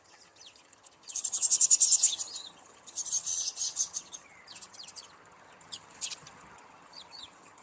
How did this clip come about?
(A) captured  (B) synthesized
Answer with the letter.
B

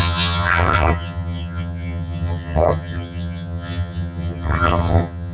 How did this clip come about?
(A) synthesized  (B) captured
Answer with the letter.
A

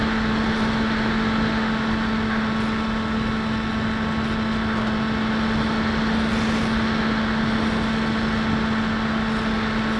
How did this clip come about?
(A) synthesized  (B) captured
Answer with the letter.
B